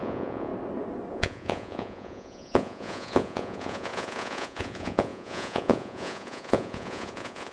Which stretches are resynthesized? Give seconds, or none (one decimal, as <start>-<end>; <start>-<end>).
0.0-0.5; 1.1-7.5